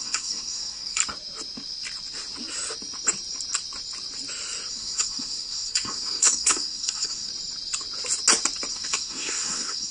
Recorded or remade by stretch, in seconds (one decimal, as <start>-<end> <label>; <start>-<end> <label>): 0.0-1.0 remade; 1.0-4.7 recorded; 4.7-7.3 remade; 7.3-8.7 recorded; 8.7-9.9 remade

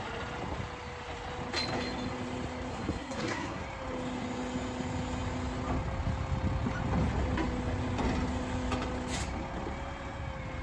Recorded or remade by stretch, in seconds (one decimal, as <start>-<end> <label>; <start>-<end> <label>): 0.0-2.7 recorded; 2.7-3.6 remade; 3.6-10.6 recorded

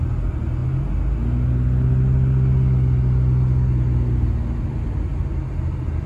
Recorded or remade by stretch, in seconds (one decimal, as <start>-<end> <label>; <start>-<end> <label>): 0.0-6.1 recorded

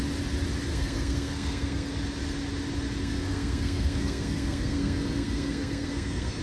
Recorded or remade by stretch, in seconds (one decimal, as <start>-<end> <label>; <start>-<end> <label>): 0.0-0.7 recorded; 0.7-1.9 remade; 1.9-3.0 recorded; 3.0-6.4 remade

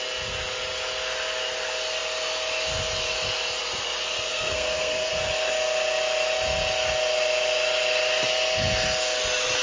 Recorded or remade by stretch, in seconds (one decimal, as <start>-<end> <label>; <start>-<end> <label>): 0.0-4.3 recorded; 4.3-5.1 remade; 5.1-9.6 recorded